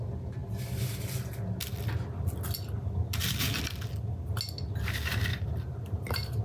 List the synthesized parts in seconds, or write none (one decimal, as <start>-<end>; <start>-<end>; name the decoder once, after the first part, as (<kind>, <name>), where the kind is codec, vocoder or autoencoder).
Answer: 5.3-6.4 (vocoder, BigVGAN v2)